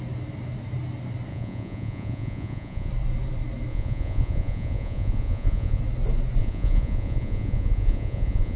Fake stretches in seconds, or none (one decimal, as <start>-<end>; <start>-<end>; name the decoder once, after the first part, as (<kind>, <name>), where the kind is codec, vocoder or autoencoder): 1.3-2.9 (vocoder, Vocos); 3.7-5.8; 6.4-8.6